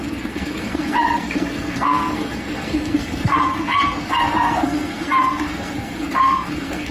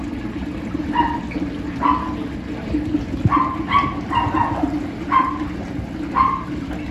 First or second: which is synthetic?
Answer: first